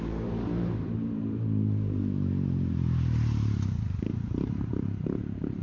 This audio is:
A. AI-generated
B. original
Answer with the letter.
A